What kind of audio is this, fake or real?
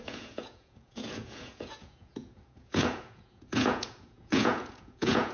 fake